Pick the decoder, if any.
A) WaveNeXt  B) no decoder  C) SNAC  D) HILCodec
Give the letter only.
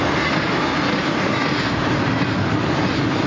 B